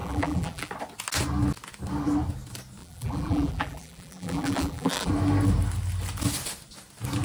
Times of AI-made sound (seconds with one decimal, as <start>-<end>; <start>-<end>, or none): 0.0-0.7; 2.8-5.1